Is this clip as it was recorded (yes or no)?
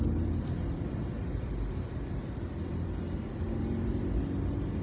yes